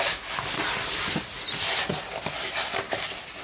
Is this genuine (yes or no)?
yes